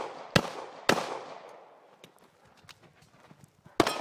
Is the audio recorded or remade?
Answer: recorded